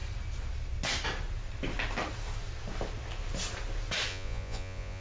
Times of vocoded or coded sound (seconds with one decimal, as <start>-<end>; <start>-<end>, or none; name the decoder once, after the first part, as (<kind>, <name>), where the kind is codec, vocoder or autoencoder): 4.1-5.0 (vocoder, Vocos)